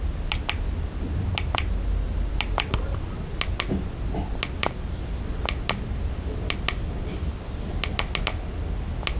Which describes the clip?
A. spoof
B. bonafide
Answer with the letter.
B